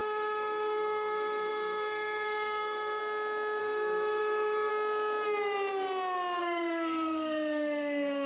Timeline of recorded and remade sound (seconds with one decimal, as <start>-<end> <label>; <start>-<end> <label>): 0.0-3.0 remade; 3.0-3.6 recorded; 3.6-4.7 remade; 4.7-6.4 recorded; 6.4-8.3 remade